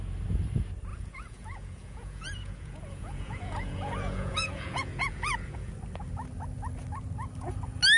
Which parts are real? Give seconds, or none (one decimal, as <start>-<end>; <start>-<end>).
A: 0.0-0.9; 5.7-8.0

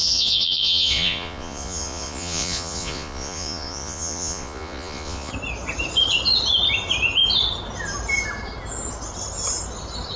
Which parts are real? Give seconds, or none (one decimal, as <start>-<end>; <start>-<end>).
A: 5.3-10.2

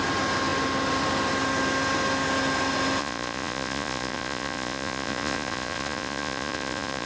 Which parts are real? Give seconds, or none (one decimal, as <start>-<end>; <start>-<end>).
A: 0.0-3.0

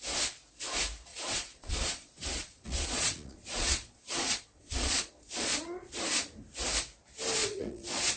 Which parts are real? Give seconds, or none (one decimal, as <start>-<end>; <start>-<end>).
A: 0.0-1.1; 6.0-7.4